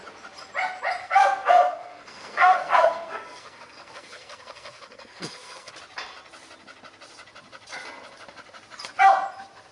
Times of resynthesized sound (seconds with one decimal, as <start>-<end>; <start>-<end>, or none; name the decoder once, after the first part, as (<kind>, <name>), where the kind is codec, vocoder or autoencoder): 1.0-5.7 (codec, SNAC)